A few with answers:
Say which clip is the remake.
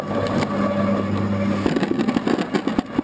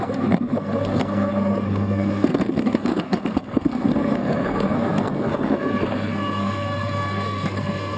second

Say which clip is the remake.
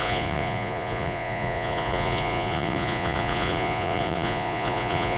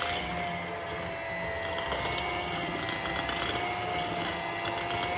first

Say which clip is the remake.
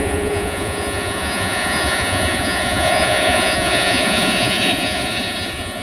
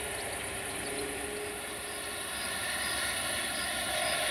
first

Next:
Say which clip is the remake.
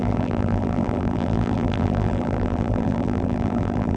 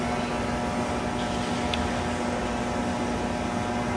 first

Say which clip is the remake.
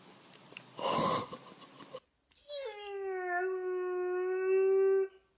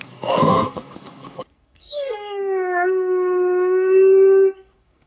second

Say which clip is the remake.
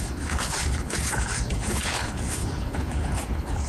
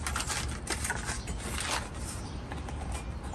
first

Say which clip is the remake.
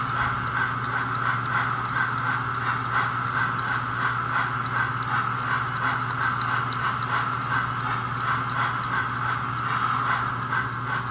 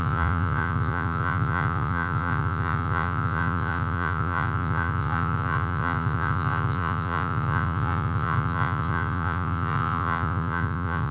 second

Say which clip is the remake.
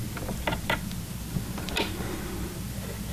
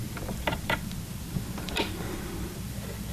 second